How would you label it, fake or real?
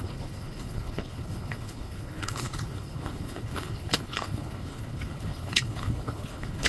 fake